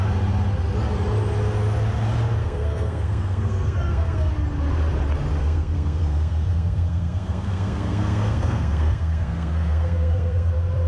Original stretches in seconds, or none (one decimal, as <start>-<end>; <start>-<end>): 0.0-2.4; 4.3-5.4; 10.5-10.9